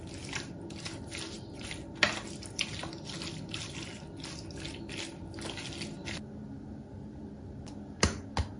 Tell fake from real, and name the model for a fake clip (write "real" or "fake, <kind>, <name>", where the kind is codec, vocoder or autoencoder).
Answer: real